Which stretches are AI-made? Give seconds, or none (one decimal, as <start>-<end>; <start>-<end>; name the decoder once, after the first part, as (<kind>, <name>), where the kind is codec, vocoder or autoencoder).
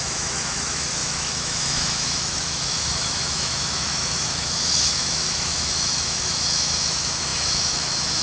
0.0-8.2 (autoencoder, DAC-VAE)